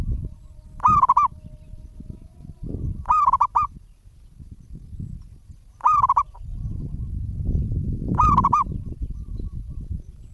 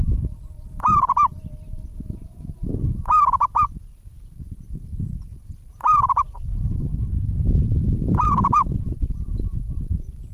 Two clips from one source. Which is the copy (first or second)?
second